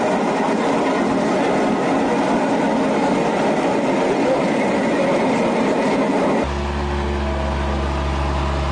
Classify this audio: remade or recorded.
recorded